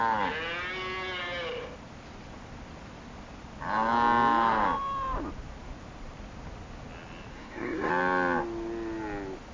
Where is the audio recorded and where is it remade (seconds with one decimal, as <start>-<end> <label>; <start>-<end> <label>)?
0.0-7.3 recorded; 7.3-7.9 remade; 7.9-9.5 recorded

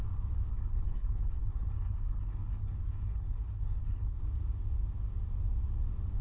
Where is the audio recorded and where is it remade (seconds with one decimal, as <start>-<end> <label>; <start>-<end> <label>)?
0.0-0.5 recorded; 0.5-4.2 remade; 4.2-6.2 recorded

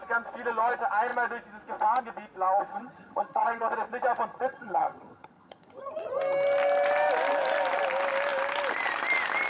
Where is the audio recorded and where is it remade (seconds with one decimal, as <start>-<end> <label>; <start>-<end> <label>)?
0.0-2.7 recorded; 2.7-3.7 remade; 3.7-4.3 recorded; 4.3-6.2 remade; 6.2-9.5 recorded

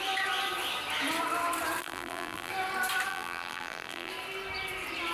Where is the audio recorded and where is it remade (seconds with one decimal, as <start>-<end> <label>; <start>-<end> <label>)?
0.0-1.8 recorded; 1.8-2.5 remade; 2.5-3.1 recorded; 3.1-4.1 remade; 4.1-5.1 recorded

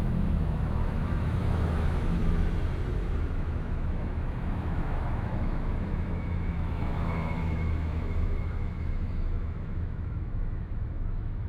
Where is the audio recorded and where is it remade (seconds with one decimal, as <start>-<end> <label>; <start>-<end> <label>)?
0.0-2.2 remade; 2.2-2.9 recorded; 2.9-11.5 remade